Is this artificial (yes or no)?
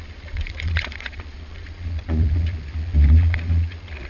yes